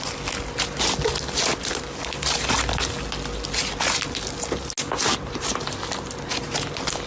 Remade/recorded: recorded